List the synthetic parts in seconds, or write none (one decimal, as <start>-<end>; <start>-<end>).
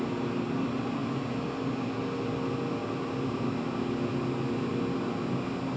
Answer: none